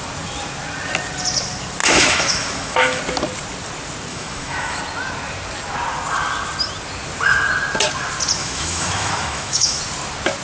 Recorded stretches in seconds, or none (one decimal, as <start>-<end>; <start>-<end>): 0.0-1.8; 3.0-4.1; 4.8-8.4; 9.8-10.4